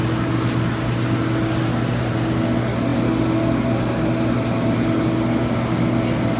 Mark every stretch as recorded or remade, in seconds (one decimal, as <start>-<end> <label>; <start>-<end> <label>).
0.0-6.4 recorded